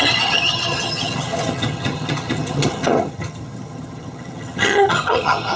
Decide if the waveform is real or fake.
fake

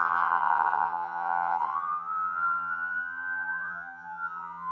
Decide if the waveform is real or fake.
fake